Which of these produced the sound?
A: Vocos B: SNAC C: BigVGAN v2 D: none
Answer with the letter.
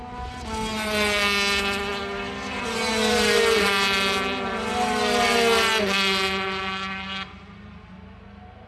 D